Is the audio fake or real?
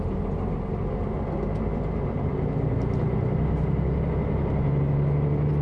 real